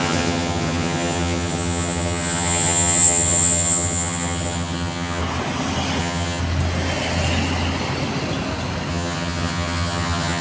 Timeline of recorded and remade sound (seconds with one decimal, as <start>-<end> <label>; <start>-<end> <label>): 0.0-5.2 remade; 5.2-6.0 recorded; 6.0-6.4 remade; 6.4-8.9 recorded; 8.9-10.4 remade